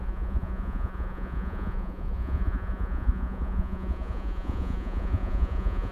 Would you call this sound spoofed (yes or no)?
yes